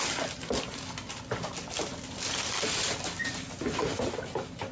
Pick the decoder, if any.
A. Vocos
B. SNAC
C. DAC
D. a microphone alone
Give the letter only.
D